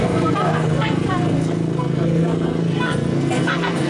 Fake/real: fake